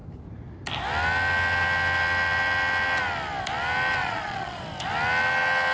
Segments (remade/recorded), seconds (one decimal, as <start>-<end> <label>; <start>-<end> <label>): 0.0-4.0 recorded; 4.0-4.6 remade; 4.6-5.7 recorded